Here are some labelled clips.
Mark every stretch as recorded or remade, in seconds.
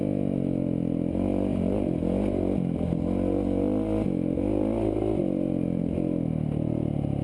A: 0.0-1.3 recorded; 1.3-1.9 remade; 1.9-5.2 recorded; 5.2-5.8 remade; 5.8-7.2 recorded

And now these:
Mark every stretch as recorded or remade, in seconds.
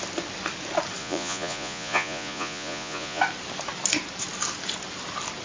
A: 0.0-1.0 recorded; 1.0-3.2 remade; 3.2-5.4 recorded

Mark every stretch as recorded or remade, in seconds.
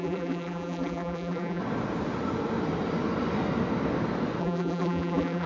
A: 0.0-1.6 remade; 1.6-4.4 recorded; 4.4-5.5 remade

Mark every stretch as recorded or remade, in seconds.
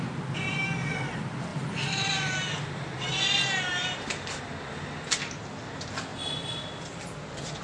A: 0.0-1.5 recorded; 1.5-4.4 remade; 4.4-6.1 recorded; 6.1-7.0 remade; 7.0-7.6 recorded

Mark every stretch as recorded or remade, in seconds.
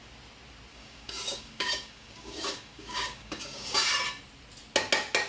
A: 0.0-0.7 recorded; 0.7-3.9 remade; 3.9-5.3 recorded